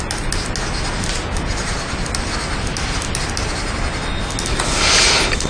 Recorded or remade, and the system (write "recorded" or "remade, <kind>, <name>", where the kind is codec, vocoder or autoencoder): recorded